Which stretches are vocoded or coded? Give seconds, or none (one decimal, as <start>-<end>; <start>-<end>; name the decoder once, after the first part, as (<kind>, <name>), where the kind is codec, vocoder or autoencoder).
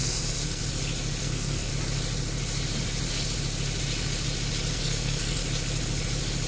0.0-0.6 (codec, SNAC); 1.2-1.7; 4.7-5.4